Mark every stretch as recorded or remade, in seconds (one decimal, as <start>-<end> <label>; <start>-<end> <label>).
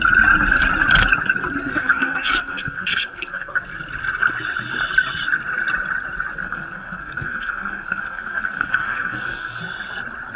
0.0-1.6 recorded; 1.6-3.6 remade; 3.6-6.4 recorded; 6.4-9.6 remade; 9.6-10.4 recorded